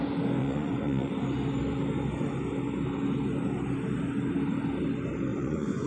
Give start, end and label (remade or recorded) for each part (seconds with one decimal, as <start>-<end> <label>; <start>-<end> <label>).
0.0-0.4 recorded; 0.4-1.2 remade; 1.2-5.3 recorded; 5.3-5.9 remade